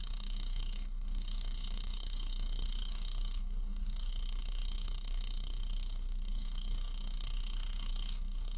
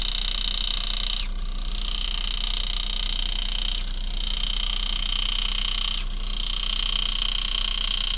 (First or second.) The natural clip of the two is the second